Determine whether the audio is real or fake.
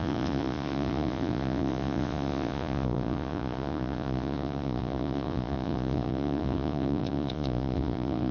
fake